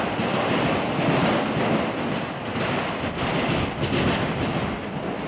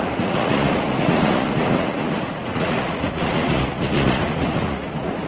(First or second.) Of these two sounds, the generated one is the second